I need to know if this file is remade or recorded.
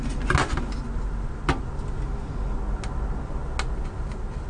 recorded